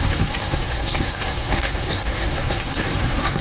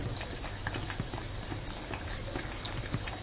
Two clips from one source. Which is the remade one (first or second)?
first